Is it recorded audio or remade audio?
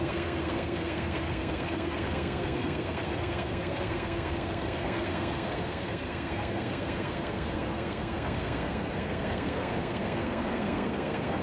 remade